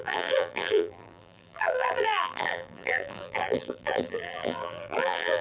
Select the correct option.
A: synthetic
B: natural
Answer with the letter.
A